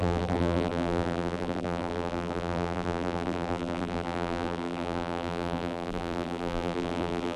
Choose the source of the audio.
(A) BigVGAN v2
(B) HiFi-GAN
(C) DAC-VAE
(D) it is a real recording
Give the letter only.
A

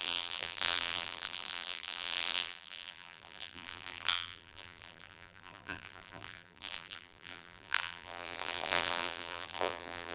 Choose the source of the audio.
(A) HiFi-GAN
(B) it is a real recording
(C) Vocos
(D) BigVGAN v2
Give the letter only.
D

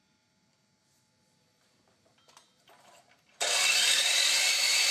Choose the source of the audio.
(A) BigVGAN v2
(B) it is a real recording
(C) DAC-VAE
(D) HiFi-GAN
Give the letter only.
A